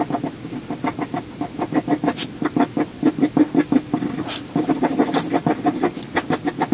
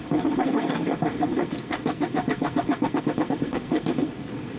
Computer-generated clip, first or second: second